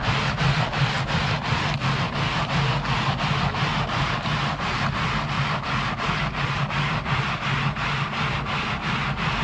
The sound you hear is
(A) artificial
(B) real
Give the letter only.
B